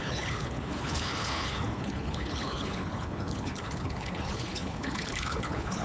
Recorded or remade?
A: remade